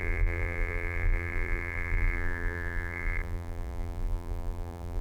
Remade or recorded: remade